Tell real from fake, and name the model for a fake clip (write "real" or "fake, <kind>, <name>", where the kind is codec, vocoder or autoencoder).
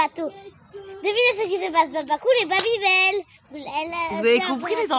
real